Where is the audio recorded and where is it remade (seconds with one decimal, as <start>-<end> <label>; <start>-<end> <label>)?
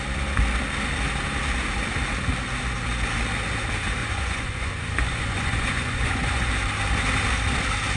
0.0-4.0 recorded; 4.0-6.5 remade; 6.5-8.0 recorded